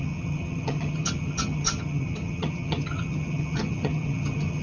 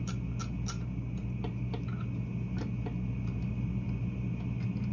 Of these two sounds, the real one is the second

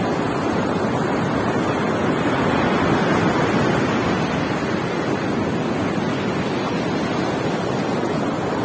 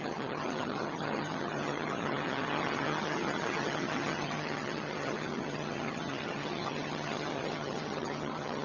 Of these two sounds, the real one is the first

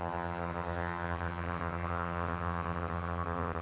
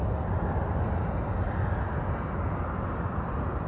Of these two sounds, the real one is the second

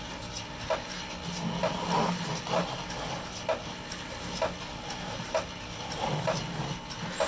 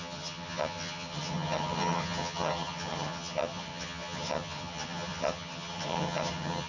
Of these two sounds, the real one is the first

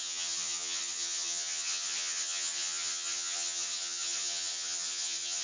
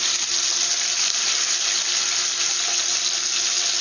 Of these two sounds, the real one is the second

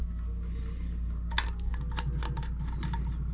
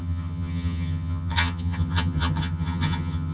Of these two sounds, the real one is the first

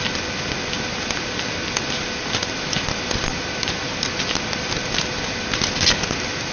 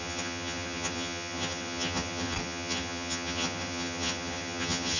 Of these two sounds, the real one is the first